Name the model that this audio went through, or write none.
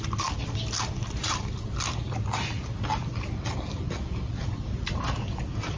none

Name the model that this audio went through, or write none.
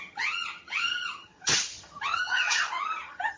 vocoder, HiFi-GAN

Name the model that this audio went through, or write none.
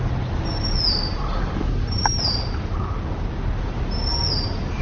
none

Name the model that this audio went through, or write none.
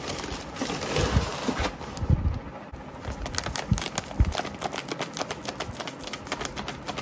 none